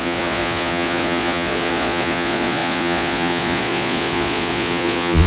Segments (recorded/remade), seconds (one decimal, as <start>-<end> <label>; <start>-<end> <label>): 0.0-5.3 remade